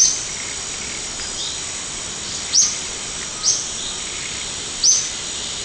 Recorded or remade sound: recorded